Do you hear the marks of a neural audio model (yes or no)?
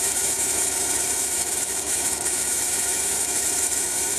yes